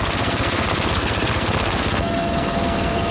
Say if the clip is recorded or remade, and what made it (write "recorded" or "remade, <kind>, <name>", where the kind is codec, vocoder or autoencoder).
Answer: remade, codec, SNAC